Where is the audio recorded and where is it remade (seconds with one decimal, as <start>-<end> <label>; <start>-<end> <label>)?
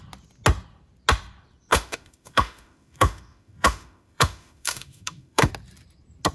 0.0-1.7 recorded; 1.7-5.5 remade; 5.5-6.3 recorded